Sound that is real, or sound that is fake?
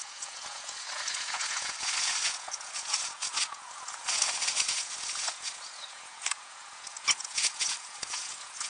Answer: fake